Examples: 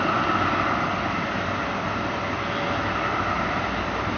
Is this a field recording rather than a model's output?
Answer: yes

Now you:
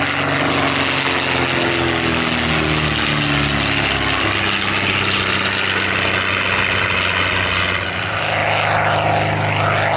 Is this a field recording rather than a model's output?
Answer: yes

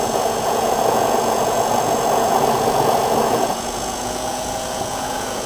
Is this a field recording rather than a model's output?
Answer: no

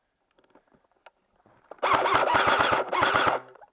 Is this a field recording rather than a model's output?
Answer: yes